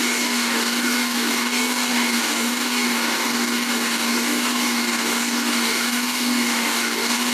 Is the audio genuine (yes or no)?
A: no